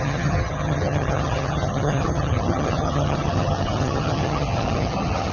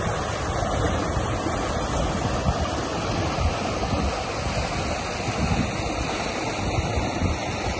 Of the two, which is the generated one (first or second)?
first